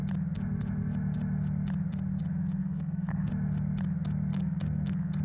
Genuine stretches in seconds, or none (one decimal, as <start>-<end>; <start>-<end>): 0.0-2.6; 3.3-4.3

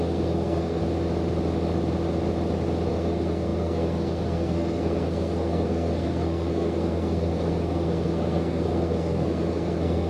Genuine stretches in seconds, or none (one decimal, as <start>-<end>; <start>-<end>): 0.8-2.9

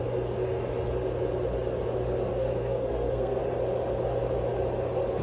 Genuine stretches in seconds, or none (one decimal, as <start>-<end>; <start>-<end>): 0.0-2.3; 3.4-5.2